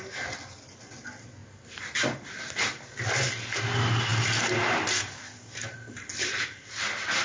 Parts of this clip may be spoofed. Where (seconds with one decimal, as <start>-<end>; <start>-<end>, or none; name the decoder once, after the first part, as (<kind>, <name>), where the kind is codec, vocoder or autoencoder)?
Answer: none